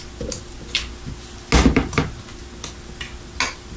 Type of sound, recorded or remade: recorded